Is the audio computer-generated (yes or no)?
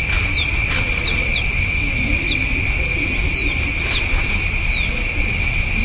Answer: no